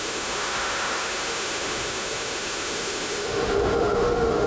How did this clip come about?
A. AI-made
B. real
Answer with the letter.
A